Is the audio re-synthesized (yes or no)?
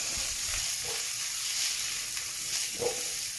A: no